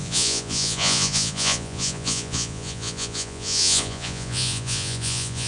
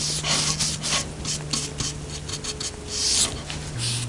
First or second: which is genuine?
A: second